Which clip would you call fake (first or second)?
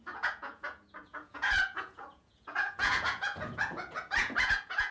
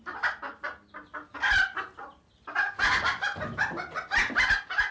first